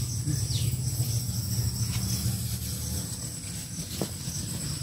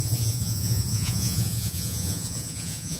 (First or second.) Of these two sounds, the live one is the first